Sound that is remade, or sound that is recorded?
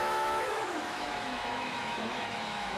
remade